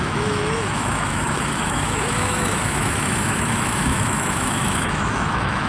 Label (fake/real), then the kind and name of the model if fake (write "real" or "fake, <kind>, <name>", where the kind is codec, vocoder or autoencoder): fake, autoencoder, DAC-VAE